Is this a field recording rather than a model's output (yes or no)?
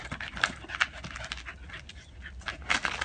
yes